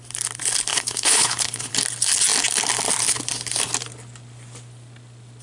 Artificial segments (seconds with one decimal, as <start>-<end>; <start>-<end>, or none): 0.7-1.7